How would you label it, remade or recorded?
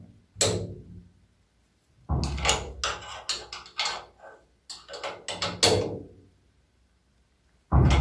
recorded